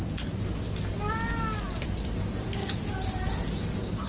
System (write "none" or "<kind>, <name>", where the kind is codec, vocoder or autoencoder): none